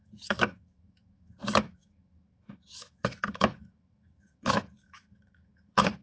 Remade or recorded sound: remade